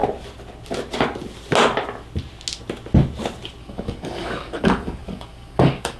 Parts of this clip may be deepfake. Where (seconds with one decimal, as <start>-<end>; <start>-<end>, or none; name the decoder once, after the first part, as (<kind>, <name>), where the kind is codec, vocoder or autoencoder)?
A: 3.6-6.0 (codec, DAC)